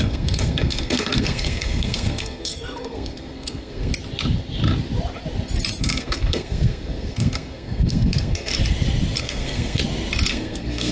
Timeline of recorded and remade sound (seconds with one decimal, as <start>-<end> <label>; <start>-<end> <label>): 0.0-3.9 remade; 3.9-5.8 recorded; 5.8-8.5 remade; 8.5-9.2 recorded; 9.2-9.8 remade; 9.8-10.3 recorded; 10.3-10.9 remade